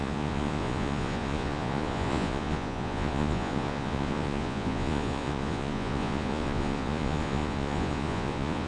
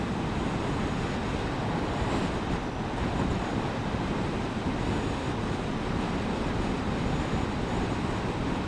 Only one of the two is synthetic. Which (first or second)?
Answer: first